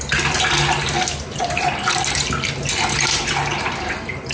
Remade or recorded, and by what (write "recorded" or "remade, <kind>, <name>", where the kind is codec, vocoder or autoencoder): recorded